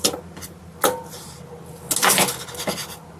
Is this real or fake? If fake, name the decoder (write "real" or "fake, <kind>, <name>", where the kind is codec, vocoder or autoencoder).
real